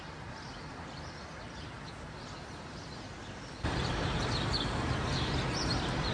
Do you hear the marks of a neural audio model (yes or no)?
no